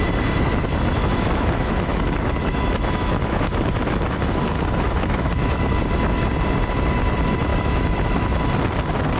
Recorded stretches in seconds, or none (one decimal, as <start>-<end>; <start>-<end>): 0.0-1.0; 5.8-7.5; 8.4-9.2